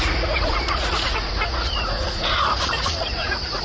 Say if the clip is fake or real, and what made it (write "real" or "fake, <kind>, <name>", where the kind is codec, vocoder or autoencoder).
fake, vocoder, Vocos